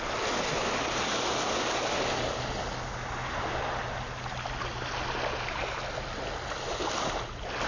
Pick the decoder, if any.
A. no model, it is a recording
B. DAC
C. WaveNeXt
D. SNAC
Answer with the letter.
A